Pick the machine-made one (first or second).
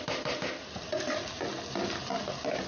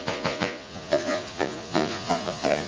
second